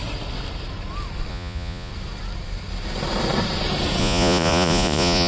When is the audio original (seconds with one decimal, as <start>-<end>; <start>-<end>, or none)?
0.0-1.3; 1.9-4.0